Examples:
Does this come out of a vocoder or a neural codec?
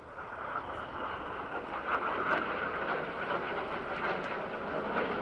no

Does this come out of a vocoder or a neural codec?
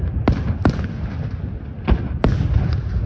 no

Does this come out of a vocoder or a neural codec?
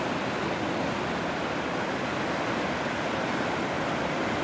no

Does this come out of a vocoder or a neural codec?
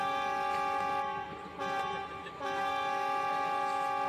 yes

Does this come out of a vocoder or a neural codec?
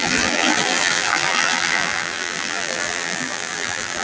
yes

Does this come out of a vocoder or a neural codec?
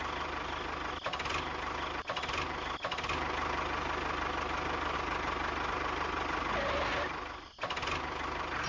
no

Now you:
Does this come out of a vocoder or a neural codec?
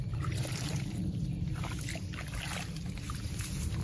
no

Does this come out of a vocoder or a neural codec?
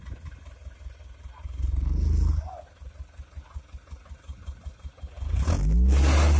no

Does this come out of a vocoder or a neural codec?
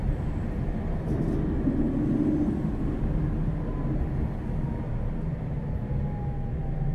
no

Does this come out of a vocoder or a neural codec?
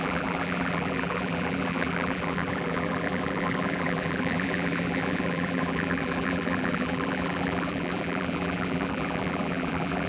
yes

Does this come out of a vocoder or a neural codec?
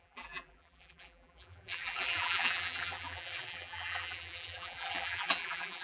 yes